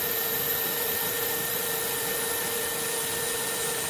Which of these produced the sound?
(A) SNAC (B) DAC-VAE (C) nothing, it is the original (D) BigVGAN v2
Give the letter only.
D